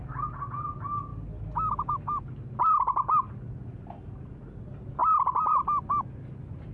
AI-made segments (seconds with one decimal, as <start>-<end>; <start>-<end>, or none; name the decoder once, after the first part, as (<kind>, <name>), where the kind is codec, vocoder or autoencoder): 5.0-6.1 (vocoder, BigVGAN v2)